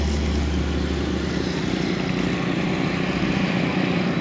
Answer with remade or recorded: recorded